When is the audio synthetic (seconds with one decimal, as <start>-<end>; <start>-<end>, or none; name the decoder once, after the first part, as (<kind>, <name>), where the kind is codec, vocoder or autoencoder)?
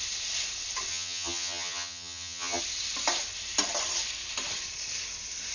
0.9-2.6 (vocoder, HiFi-GAN)